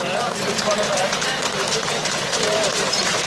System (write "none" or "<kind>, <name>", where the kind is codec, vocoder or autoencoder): vocoder, BigVGAN v2